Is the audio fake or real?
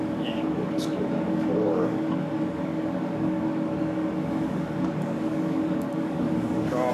fake